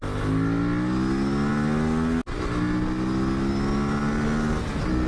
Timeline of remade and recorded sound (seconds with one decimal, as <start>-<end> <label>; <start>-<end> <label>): 0.0-5.1 recorded